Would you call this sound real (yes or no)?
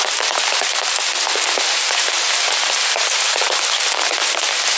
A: yes